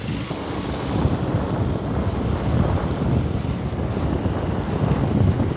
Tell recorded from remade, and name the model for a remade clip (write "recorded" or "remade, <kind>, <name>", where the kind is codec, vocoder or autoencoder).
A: recorded